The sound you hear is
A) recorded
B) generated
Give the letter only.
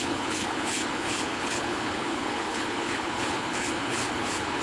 B